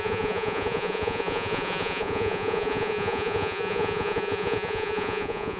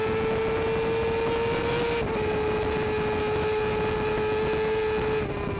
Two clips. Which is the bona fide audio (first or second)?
second